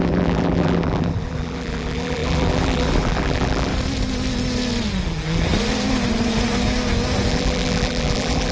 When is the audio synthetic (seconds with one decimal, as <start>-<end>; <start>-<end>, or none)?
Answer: 0.0-3.7; 7.3-8.5